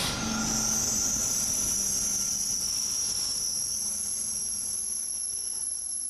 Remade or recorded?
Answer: recorded